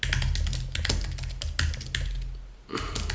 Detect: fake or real real